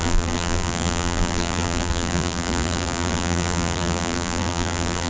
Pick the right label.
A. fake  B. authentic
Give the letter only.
A